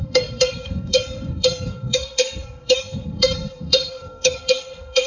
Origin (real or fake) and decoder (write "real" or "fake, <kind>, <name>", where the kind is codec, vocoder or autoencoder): fake, codec, SNAC